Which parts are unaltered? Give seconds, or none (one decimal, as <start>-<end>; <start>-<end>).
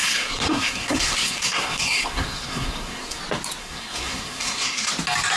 3.2-3.6; 4.9-5.4